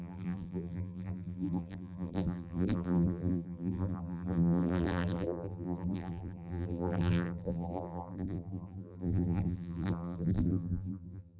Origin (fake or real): fake